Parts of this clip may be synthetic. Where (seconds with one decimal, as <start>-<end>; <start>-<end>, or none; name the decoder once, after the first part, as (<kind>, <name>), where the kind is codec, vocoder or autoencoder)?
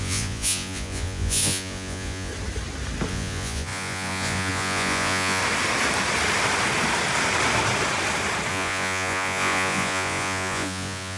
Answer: 0.0-2.3 (vocoder, Vocos); 3.1-5.4; 8.5-11.2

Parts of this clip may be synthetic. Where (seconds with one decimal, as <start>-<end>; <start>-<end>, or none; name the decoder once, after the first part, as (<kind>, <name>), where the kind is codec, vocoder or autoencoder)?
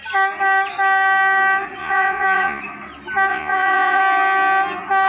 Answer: 1.8-2.6 (vocoder, Vocos); 3.3-4.0